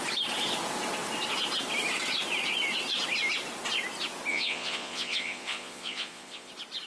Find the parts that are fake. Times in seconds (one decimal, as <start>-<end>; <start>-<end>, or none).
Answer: 4.3-6.5